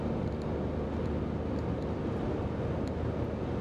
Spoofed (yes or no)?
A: no